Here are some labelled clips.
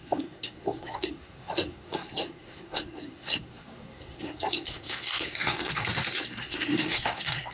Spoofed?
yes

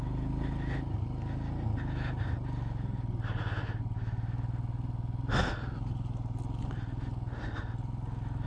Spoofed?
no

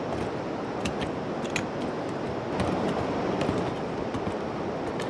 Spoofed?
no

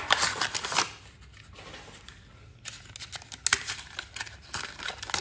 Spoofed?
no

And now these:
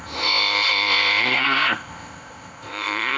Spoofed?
yes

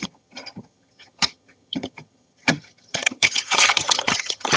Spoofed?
yes